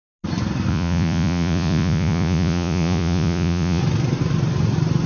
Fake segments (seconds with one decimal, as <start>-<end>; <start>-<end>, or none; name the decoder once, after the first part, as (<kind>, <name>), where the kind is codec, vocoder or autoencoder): 0.7-3.8 (vocoder, Vocos)